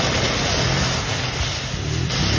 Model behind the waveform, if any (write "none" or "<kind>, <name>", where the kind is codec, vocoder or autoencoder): none